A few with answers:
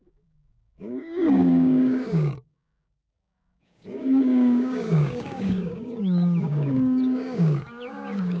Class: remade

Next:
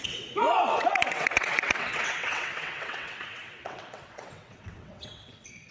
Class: remade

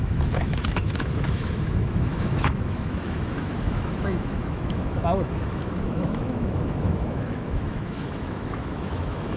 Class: remade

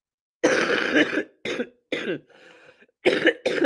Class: recorded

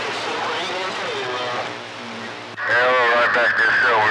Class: recorded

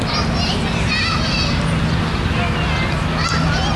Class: recorded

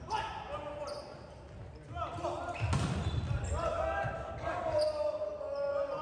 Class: recorded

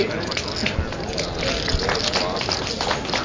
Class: recorded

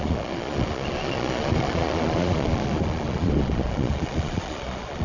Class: remade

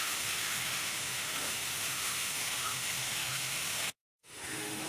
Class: remade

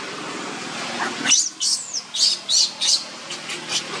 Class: recorded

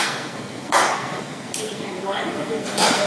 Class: remade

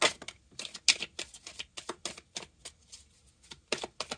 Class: recorded